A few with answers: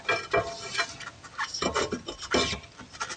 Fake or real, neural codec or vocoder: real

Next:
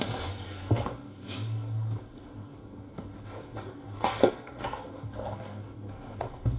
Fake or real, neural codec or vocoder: fake, codec, SNAC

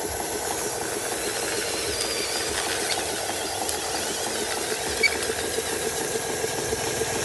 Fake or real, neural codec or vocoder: real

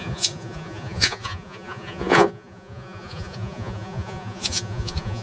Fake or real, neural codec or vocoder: fake, vocoder, Vocos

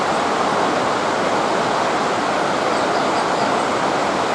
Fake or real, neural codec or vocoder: real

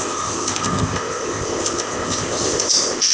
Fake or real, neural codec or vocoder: fake, codec, ZipCodec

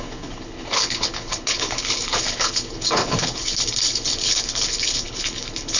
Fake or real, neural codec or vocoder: fake, codec, HILCodec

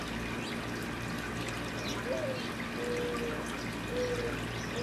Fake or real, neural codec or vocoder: real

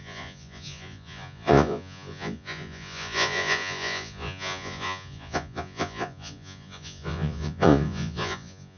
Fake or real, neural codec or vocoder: fake, vocoder, Vocos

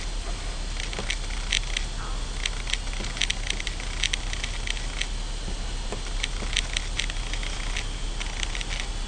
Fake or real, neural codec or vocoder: real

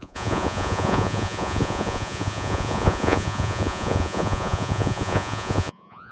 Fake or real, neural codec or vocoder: fake, vocoder, Vocos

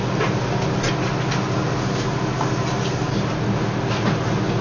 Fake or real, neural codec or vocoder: real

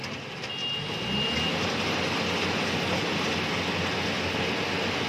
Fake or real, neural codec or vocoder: real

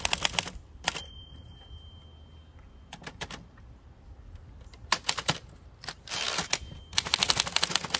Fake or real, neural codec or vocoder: real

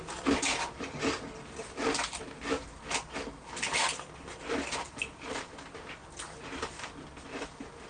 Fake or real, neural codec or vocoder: real